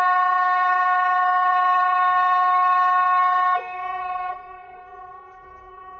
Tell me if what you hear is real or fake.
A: fake